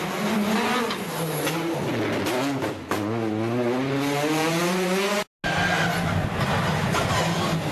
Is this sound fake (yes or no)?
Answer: no